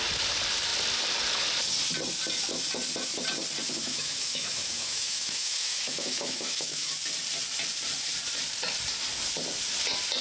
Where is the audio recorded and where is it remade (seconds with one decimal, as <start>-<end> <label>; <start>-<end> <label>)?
0.0-3.8 recorded; 3.8-6.9 remade; 6.9-10.2 recorded